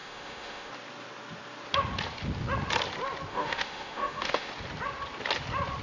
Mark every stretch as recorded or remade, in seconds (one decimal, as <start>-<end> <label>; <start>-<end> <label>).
0.0-0.7 remade; 0.7-3.3 recorded; 3.3-4.5 remade; 4.5-5.8 recorded